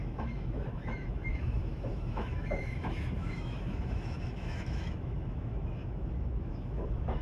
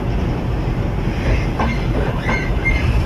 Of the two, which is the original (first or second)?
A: second